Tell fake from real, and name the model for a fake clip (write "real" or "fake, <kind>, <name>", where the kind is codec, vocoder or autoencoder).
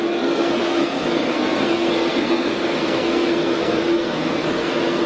fake, codec, SNAC